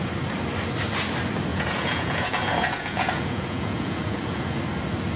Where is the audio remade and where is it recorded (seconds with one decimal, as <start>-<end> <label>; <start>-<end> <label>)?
0.0-1.5 recorded; 1.5-4.6 remade; 4.6-5.2 recorded